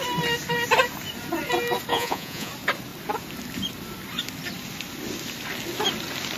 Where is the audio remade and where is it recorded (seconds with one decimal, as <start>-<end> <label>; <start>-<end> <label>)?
0.0-1.9 recorded; 1.9-2.5 remade; 2.5-6.4 recorded